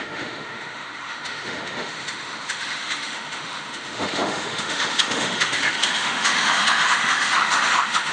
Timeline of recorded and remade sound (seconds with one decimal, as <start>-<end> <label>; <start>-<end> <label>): 0.0-8.1 remade

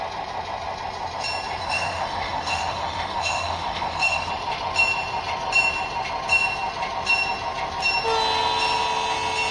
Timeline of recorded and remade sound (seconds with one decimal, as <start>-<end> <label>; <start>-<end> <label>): 0.0-1.6 recorded; 1.6-4.3 remade; 4.3-9.5 recorded

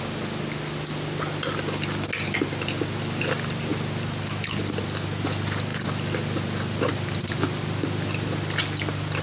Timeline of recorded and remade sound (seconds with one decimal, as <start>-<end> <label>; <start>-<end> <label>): 0.0-9.2 recorded

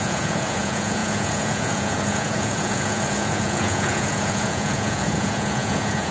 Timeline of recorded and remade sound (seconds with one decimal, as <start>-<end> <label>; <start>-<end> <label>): 0.0-6.1 remade

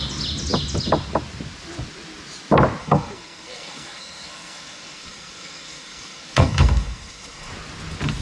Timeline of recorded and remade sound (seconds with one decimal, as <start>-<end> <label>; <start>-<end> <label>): 0.0-2.8 recorded; 2.8-7.5 remade; 7.5-8.2 recorded

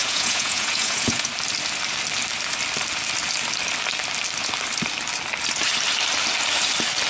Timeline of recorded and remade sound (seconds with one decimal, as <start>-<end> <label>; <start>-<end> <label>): 0.0-1.3 remade; 1.3-7.1 recorded

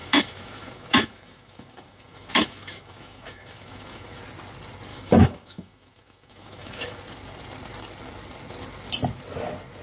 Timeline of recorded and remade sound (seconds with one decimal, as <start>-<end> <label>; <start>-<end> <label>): 0.0-4.2 remade; 4.2-4.9 recorded; 4.9-7.0 remade; 7.0-9.8 recorded

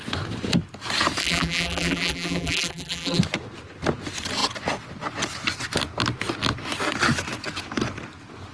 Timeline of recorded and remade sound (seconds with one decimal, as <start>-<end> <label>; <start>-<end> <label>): 0.0-1.2 recorded; 1.2-3.2 remade; 3.2-8.5 recorded